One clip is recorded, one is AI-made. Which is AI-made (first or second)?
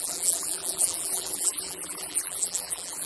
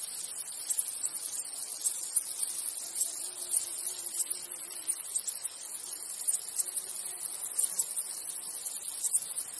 first